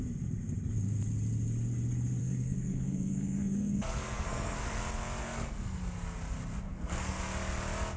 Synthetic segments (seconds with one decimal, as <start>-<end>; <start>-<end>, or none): 2.2-4.8; 5.2-5.8; 6.7-7.2